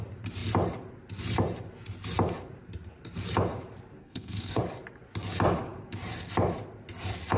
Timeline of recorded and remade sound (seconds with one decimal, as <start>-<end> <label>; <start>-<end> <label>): 0.0-4.0 recorded; 4.0-4.6 remade; 4.6-7.4 recorded